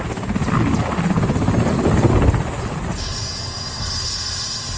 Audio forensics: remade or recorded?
recorded